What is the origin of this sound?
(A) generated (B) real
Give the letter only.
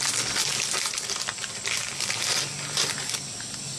B